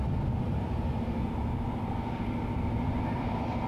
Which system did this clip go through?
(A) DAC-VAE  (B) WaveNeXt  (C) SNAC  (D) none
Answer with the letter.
D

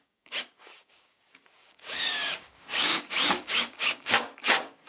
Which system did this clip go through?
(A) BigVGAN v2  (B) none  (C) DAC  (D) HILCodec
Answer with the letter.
C